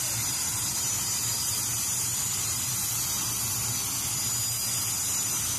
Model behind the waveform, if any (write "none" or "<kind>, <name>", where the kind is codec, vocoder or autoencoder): none